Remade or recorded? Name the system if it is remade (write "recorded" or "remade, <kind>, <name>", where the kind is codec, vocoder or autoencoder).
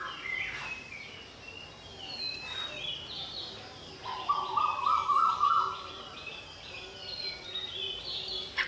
recorded